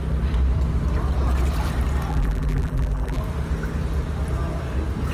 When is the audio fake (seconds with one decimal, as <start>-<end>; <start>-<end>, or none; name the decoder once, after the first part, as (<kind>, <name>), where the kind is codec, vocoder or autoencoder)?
2.1-3.2 (vocoder, BigVGAN v2)